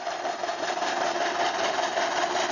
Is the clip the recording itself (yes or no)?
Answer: yes